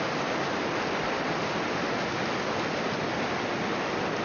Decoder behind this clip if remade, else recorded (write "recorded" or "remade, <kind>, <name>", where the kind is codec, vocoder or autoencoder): recorded